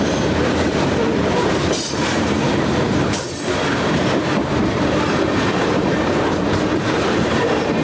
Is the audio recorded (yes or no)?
no